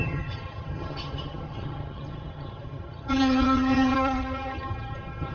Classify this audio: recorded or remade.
remade